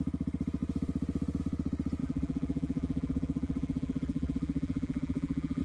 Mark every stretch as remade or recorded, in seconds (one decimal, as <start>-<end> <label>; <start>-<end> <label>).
0.0-2.0 recorded; 2.0-5.6 remade